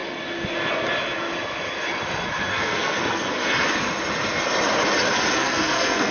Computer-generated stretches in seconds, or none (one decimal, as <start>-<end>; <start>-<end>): 2.5-3.3; 5.4-6.1